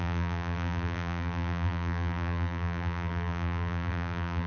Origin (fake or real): fake